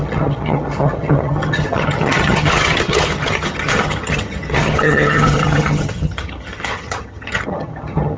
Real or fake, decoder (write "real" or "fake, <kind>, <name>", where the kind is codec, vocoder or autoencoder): fake, vocoder, HiFi-GAN